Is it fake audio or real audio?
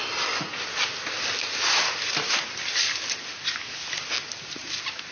real